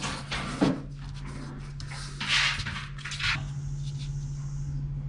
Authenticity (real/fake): real